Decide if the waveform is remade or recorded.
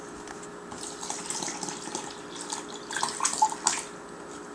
recorded